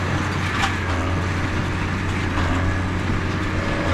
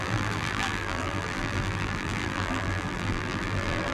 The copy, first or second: second